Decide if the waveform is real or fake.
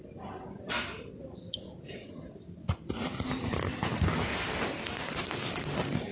real